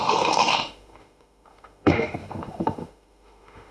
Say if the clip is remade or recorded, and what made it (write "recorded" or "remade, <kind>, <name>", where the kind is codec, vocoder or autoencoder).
remade, autoencoder, DAC-VAE